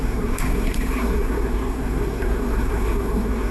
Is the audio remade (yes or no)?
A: yes